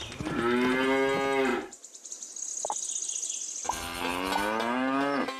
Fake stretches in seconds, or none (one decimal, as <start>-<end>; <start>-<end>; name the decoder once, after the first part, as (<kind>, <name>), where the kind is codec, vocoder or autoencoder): 1.5-2.1 (vocoder, BigVGAN v2); 2.5-3.3; 4.1-5.4